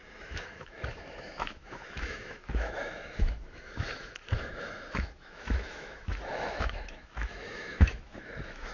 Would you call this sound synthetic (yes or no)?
yes